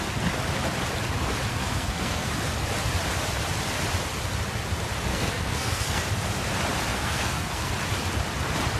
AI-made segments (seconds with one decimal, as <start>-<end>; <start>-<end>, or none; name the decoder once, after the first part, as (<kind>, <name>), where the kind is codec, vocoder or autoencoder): 1.5-2.3 (codec, SNAC); 5.1-6.1; 6.9-7.7